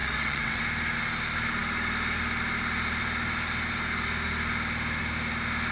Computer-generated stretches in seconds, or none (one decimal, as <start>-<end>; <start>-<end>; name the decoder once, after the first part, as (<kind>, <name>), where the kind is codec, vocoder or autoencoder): 0.0-0.6 (vocoder, WaveNeXt)